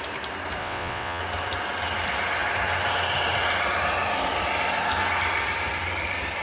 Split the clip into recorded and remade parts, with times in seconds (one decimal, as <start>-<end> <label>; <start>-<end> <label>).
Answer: 0.0-0.6 recorded; 0.6-1.2 remade; 1.2-6.4 recorded

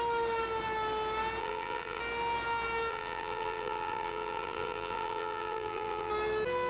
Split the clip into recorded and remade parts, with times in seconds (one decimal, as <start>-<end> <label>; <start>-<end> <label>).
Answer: 0.0-1.4 recorded; 1.4-2.0 remade; 2.0-2.9 recorded; 2.9-6.1 remade; 6.1-6.7 recorded

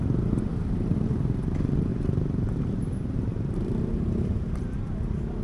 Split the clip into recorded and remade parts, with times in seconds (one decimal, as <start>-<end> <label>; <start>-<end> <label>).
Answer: 0.0-0.5 recorded; 0.5-1.5 remade; 1.5-1.9 recorded; 1.9-4.6 remade; 4.6-5.4 recorded

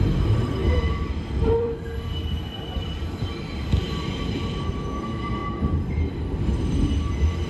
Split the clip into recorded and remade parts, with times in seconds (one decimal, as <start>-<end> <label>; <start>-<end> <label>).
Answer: 0.0-5.4 remade; 5.4-6.1 recorded; 6.1-7.5 remade